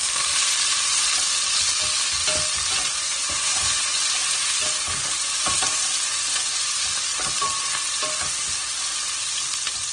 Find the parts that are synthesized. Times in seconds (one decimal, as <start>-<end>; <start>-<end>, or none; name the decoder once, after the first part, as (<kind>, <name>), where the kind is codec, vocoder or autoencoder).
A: 2.7-4.0 (vocoder, Vocos); 6.1-6.7